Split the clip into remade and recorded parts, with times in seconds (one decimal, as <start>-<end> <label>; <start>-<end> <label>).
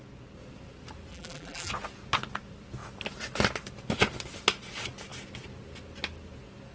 0.0-1.1 recorded; 1.1-1.7 remade; 1.7-6.7 recorded